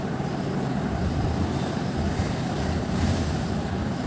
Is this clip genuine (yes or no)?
no